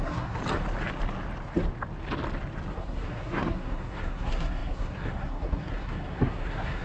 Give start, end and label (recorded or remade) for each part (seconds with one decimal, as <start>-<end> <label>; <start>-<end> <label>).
0.0-0.4 remade; 0.4-2.7 recorded; 2.7-6.8 remade